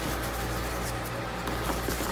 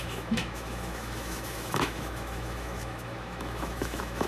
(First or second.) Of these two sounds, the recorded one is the first